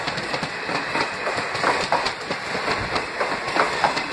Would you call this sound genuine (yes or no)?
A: no